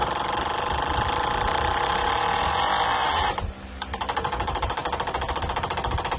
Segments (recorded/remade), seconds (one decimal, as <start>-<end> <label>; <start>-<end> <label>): 0.0-6.2 recorded